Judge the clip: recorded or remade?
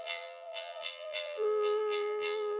remade